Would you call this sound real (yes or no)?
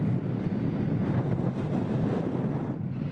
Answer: yes